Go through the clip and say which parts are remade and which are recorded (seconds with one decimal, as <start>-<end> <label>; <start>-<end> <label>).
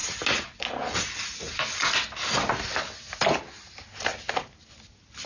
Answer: 0.0-5.3 recorded